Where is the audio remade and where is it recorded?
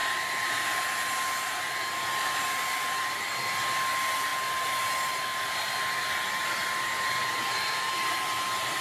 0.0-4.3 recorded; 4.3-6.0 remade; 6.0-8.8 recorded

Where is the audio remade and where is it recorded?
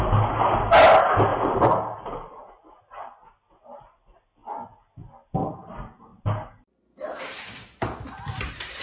0.0-1.3 recorded; 1.3-2.5 remade; 2.5-8.8 recorded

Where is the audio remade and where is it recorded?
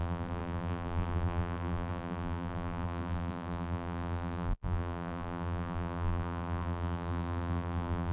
0.0-8.1 remade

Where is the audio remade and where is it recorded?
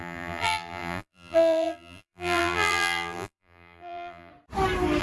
0.0-4.3 remade; 4.3-5.0 recorded